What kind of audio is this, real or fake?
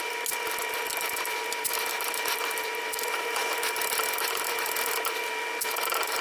real